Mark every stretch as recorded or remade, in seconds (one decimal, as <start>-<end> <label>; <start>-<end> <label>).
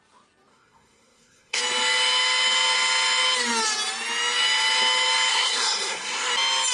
0.0-0.5 recorded; 0.5-1.6 remade; 1.6-5.3 recorded; 5.3-6.3 remade; 6.3-6.7 recorded